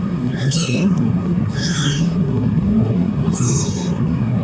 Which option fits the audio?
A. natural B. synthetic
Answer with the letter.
B